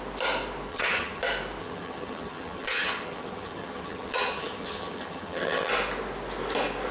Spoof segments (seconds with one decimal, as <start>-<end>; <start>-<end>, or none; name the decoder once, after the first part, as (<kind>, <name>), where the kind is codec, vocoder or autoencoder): 0.7-1.2 (vocoder, HiFi-GAN); 1.6-5.7